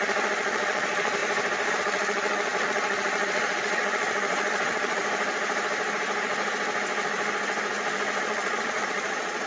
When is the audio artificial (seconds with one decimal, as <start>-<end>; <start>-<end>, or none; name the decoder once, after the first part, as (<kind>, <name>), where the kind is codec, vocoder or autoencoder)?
0.0-1.2 (vocoder, Vocos); 1.7-5.0; 8.2-9.5

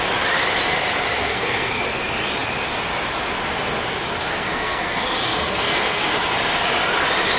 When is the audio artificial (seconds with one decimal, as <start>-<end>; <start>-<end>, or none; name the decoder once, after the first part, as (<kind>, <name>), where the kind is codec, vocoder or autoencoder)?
1.2-1.8 (codec, SNAC); 4.2-6.1

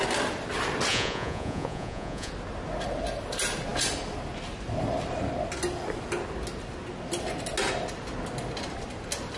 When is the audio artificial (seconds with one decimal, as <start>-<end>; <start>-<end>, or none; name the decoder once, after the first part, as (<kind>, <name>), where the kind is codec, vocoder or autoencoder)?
0.9-2.3 (vocoder, Vocos)